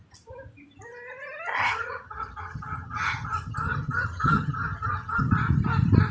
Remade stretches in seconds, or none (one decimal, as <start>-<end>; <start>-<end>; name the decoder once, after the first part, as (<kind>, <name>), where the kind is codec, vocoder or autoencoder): 1.6-5.3 (vocoder, HiFi-GAN)